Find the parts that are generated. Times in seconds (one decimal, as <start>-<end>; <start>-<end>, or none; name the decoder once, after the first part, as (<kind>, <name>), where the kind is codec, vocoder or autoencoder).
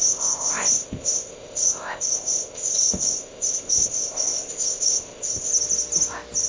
0.0-5.5 (codec, ZipCodec)